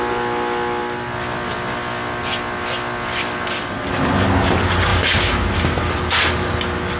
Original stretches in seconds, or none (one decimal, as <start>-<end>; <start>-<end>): 0.0-4.9; 6.0-7.0